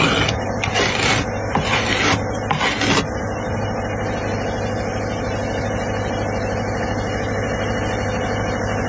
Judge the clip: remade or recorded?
recorded